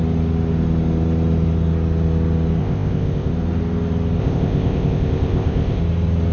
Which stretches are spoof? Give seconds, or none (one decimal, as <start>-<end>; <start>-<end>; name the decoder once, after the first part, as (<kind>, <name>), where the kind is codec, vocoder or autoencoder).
2.6-3.3 (codec, ZipCodec); 4.2-5.8